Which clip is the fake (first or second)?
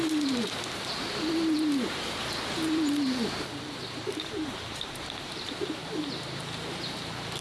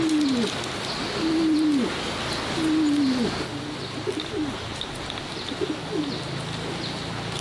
first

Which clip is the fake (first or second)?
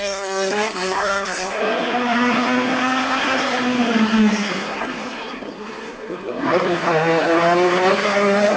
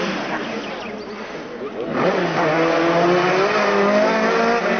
first